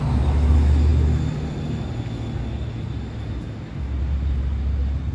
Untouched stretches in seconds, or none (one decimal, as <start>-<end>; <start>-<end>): 0.0-5.1